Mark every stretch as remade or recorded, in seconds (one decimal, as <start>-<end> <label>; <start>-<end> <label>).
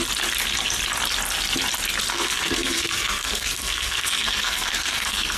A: 0.0-2.1 recorded; 2.1-5.4 remade